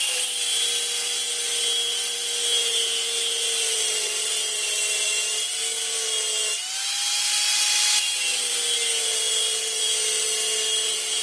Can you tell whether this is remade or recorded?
recorded